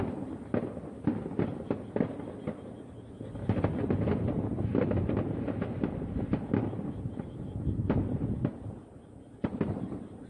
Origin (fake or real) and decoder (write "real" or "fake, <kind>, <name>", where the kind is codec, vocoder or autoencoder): real